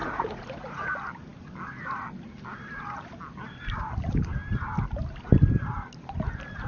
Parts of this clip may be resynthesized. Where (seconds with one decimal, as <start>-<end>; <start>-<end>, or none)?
0.0-0.9